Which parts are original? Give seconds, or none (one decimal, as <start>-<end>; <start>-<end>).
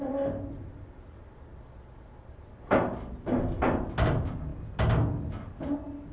0.0-6.1